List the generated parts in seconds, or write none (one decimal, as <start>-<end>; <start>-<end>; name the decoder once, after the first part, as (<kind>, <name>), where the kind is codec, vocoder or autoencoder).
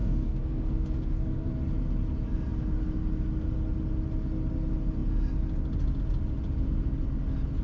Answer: 0.0-1.5 (codec, SNAC)